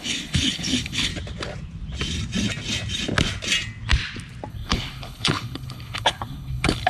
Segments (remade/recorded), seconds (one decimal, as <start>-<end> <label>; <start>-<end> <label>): 0.0-1.1 remade; 1.1-4.5 recorded; 4.5-6.9 remade

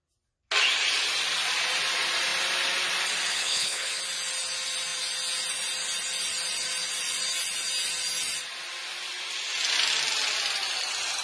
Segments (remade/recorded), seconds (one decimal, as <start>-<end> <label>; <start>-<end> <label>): 0.0-3.3 recorded; 3.3-4.0 remade; 4.0-11.2 recorded

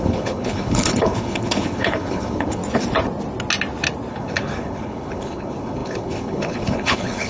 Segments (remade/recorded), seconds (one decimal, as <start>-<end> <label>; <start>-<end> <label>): 0.0-2.6 remade; 2.6-4.1 recorded; 4.1-7.3 remade

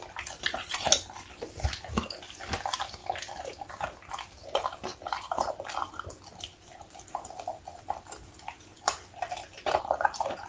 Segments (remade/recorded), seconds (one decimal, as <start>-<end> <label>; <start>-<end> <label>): 0.0-10.5 recorded

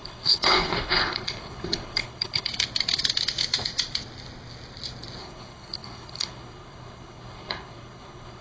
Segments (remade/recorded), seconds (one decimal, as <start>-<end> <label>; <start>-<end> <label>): 0.0-2.5 remade; 2.5-5.2 recorded; 5.2-8.4 remade

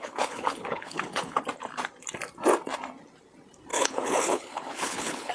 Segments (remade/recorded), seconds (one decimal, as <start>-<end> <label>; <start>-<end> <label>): 0.0-1.4 remade; 1.4-3.7 recorded; 3.7-5.3 remade

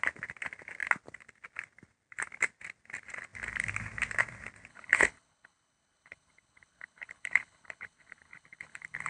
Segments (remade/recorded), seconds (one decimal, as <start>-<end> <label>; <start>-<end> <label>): 0.0-4.7 recorded; 4.7-9.1 remade